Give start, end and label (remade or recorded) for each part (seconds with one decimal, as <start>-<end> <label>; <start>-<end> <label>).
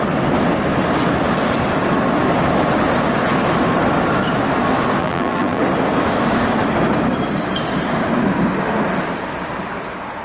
0.0-5.0 recorded; 5.0-5.6 remade; 5.6-10.2 recorded